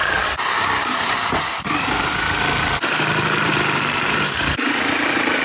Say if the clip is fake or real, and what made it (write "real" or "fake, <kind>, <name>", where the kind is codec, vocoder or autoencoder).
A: fake, vocoder, BigVGAN v2